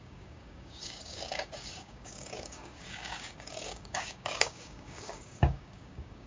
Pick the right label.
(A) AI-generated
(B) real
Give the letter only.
A